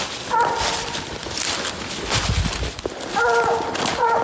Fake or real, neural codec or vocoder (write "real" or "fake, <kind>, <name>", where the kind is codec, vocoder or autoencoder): real